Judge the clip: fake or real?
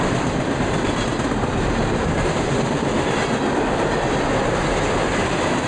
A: real